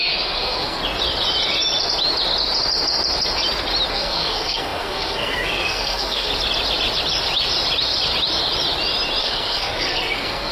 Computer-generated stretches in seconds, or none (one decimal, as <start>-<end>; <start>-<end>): 0.0-0.8; 3.9-6.3; 9.2-10.5